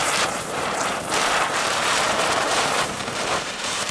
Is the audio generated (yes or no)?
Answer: yes